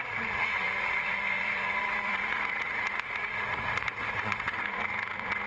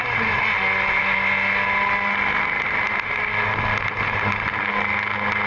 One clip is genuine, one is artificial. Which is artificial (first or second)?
first